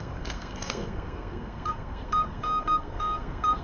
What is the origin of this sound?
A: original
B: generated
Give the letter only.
B